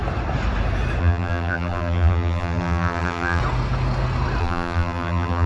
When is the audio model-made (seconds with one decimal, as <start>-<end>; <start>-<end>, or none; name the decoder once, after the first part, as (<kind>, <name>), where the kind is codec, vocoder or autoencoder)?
1.0-3.4 (vocoder, BigVGAN v2); 4.4-5.5